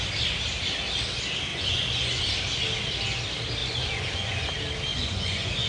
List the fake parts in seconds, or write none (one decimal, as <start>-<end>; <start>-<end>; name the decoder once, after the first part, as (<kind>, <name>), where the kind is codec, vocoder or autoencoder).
1.5-2.2 (vocoder, Vocos); 3.6-4.5; 4.9-5.7